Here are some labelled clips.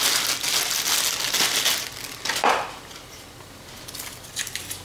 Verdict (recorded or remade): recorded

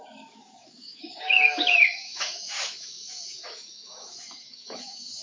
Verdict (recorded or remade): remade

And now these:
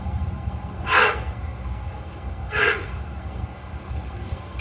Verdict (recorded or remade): remade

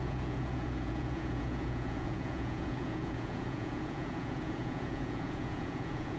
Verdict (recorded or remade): remade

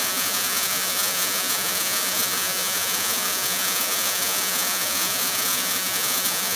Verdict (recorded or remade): remade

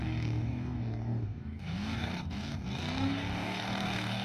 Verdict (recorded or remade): remade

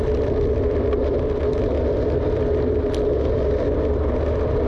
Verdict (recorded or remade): recorded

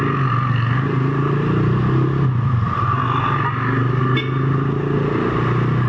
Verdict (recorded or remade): recorded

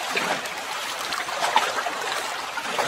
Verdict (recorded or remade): remade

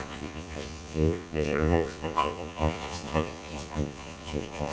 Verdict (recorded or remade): remade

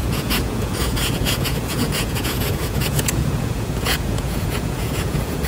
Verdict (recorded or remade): remade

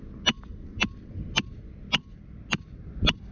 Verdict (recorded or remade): recorded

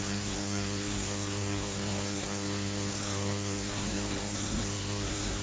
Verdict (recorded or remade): remade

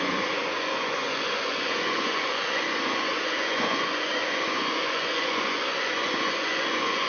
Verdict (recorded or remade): remade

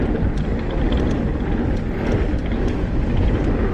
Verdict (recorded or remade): recorded